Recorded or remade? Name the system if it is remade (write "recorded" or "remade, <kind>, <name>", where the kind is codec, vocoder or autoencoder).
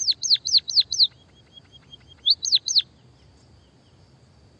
recorded